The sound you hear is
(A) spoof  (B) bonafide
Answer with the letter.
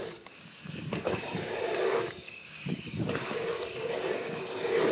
A